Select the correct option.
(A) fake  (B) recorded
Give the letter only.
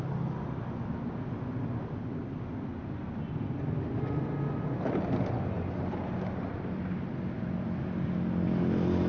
B